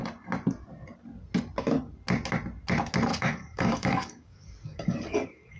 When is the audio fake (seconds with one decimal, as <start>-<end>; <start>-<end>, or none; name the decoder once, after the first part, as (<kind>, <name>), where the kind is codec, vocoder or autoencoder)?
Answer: 3.1-5.6 (codec, DAC)